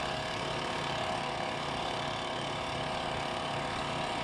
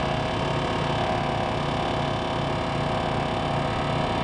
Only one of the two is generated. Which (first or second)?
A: first